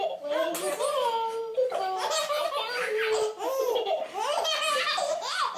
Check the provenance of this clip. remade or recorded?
recorded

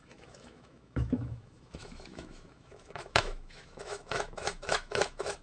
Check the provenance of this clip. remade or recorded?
remade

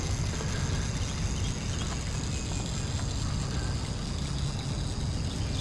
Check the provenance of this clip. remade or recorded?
recorded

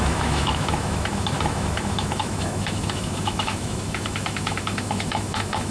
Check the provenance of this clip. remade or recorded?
remade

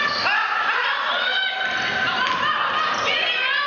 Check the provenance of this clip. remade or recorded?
recorded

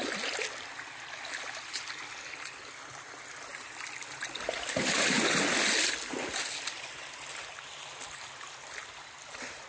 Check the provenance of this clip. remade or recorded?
recorded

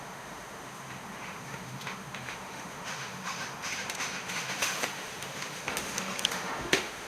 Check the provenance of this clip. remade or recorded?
remade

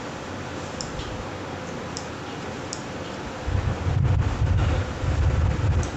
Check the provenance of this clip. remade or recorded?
recorded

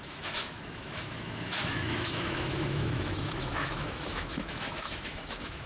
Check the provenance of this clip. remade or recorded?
remade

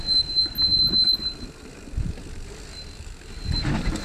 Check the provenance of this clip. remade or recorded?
recorded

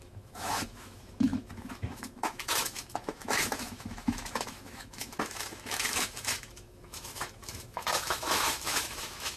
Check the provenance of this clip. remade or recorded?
remade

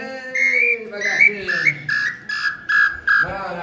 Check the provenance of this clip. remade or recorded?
recorded